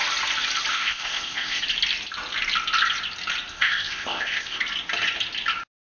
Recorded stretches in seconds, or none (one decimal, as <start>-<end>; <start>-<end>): 0.0-0.7; 1.6-3.5; 4.6-6.0